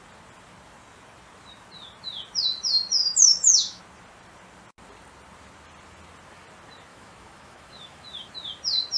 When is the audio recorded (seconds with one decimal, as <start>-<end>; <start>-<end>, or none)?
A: 0.0-3.0; 3.8-6.9; 8.3-9.0